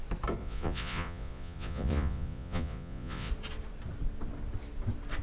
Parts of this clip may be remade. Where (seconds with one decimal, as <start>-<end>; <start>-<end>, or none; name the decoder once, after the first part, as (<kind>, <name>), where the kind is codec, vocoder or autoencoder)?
0.4-3.3 (vocoder, Vocos)